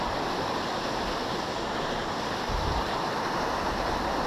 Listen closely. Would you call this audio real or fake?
real